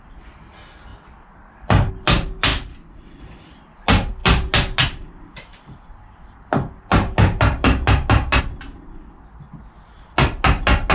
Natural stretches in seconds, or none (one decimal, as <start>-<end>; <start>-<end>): 0.0-10.9